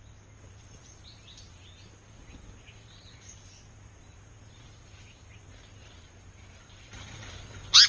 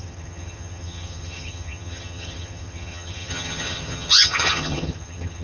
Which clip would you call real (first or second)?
first